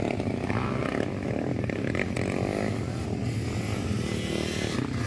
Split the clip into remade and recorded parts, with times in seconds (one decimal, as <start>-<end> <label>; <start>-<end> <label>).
0.0-5.1 recorded